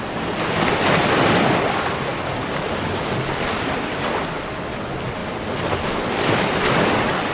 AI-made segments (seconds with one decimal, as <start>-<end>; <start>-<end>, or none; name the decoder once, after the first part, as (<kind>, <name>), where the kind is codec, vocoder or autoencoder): none